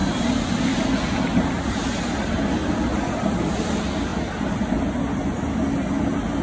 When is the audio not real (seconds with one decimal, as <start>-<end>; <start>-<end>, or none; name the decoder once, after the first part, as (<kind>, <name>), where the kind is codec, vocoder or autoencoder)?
none